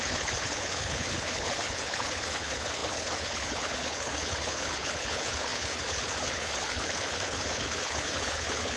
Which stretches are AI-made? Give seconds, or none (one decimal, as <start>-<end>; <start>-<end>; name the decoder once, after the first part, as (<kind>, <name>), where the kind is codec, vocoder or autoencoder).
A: 0.0-8.8 (codec, HILCodec)